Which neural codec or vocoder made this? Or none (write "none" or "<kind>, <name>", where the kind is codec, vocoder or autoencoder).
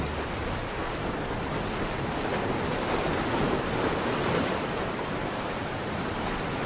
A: none